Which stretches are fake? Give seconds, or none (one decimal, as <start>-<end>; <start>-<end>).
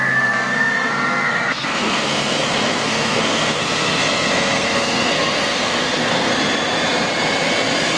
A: 0.0-6.3